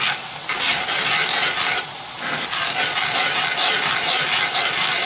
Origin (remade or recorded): recorded